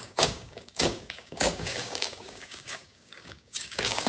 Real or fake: fake